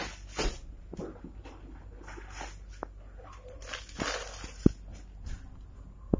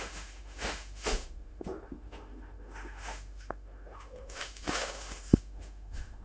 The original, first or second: first